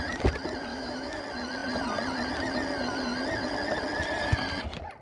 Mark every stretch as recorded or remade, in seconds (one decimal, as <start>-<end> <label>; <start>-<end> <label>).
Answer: 0.0-0.7 recorded; 0.7-1.2 remade; 1.2-5.0 recorded